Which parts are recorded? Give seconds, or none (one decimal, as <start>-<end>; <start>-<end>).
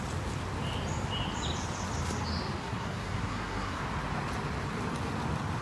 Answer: 0.0-2.6; 3.8-5.6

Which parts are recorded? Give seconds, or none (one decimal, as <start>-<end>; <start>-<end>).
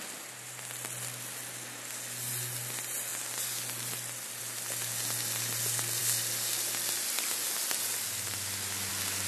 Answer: 0.0-9.3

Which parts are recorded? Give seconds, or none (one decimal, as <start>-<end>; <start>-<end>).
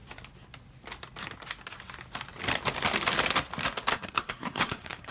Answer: 0.0-3.9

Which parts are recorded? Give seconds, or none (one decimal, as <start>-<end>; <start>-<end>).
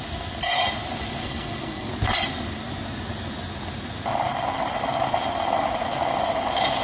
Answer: 0.0-1.2; 1.9-6.8